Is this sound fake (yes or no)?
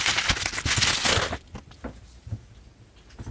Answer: no